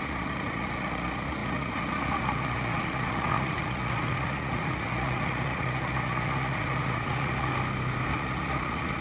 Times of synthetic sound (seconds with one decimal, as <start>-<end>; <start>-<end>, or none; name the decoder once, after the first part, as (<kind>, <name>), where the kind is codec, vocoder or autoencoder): 0.0-7.5 (vocoder, Vocos); 8.1-9.0

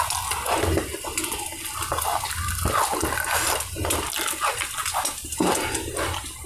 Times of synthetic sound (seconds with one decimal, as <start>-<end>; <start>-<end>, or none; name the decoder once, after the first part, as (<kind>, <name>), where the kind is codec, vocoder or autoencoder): 4.8-5.9 (vocoder, BigVGAN v2)

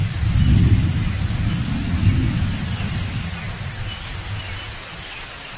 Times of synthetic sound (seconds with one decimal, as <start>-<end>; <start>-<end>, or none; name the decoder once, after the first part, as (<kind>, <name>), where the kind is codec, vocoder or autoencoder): 0.0-1.7 (vocoder, BigVGAN v2)

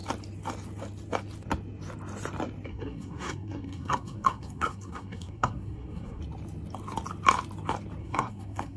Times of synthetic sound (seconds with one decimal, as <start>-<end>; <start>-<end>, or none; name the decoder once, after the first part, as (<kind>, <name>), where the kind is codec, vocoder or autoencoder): 2.7-6.2 (codec, SNAC); 8.0-8.8

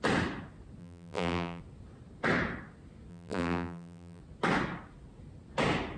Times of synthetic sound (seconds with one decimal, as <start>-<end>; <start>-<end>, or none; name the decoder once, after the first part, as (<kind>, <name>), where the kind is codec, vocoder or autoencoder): 0.8-1.6 (vocoder, BigVGAN v2); 3.1-4.2

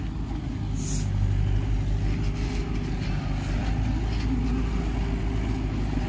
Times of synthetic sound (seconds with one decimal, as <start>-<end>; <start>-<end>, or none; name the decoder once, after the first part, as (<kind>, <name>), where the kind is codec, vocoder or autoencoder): none

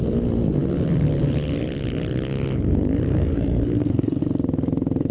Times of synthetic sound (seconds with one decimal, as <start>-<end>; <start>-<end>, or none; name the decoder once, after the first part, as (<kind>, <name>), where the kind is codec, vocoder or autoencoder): 3.1-4.2 (codec, SNAC)

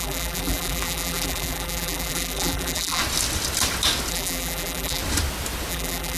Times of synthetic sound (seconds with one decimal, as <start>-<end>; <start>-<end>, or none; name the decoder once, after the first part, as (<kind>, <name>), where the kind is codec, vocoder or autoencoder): 0.0-3.0 (vocoder, BigVGAN v2); 4.1-5.0; 5.7-6.2